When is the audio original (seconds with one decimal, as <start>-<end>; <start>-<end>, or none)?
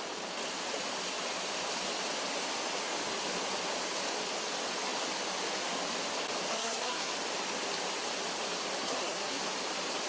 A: 0.0-6.5; 7.1-8.8; 9.4-10.1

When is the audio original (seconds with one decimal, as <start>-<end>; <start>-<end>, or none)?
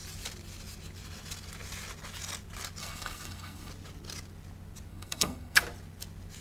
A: 0.0-2.8; 3.7-4.9; 5.6-6.4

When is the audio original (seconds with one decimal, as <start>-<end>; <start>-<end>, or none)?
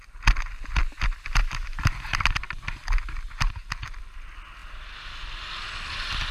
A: 0.0-6.3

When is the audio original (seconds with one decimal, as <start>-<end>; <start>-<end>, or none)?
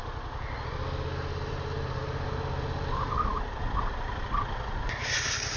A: 0.0-5.6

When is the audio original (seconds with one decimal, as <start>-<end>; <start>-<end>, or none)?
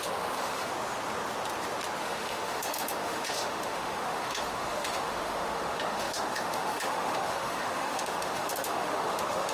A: 0.7-2.0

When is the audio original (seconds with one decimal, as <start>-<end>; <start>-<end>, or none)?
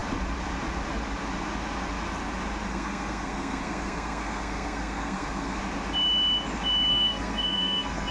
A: 0.0-2.7; 5.6-6.9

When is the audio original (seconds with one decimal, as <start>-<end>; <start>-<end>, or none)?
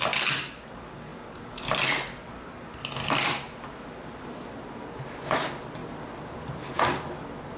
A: 0.0-7.6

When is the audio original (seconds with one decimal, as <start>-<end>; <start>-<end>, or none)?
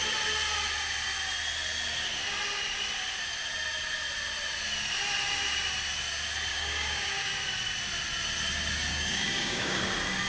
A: 0.0-6.5; 7.3-8.9; 9.8-10.3